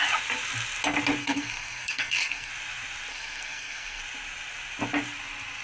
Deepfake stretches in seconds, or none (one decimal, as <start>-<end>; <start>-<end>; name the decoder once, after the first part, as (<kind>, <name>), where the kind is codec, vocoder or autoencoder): 1.2-2.5 (codec, SNAC); 3.1-4.0